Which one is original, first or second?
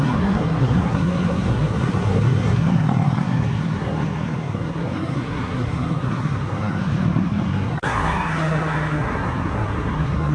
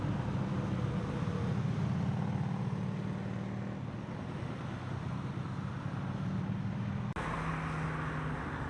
second